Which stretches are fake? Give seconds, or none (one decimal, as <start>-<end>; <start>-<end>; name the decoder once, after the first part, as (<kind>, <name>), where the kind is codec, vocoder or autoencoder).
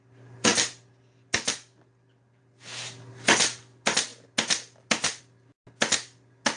none